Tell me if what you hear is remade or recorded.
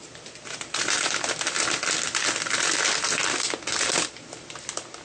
recorded